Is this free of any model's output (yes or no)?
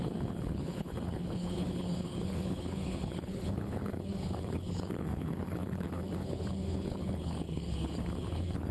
no